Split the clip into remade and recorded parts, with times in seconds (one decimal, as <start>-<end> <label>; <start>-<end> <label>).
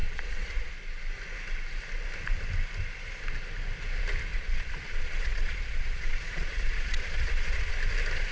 0.0-0.7 remade; 0.7-4.3 recorded; 4.3-7.7 remade; 7.7-8.3 recorded